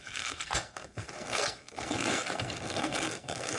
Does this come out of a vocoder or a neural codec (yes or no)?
yes